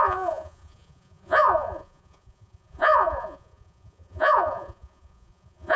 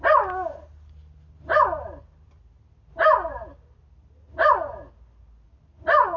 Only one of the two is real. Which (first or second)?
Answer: second